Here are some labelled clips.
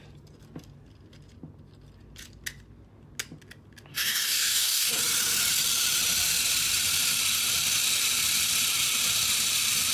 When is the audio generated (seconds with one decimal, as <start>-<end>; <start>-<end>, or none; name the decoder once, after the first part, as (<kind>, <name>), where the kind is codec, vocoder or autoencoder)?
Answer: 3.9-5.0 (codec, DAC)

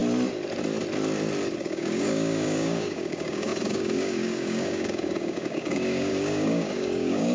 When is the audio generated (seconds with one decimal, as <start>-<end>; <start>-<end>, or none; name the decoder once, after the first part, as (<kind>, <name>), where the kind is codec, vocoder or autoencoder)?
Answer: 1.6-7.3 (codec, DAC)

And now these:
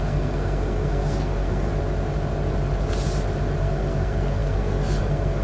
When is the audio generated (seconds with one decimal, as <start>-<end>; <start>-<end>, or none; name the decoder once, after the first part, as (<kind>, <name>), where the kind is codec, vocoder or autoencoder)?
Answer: 0.0-1.7 (codec, SNAC); 3.6-5.4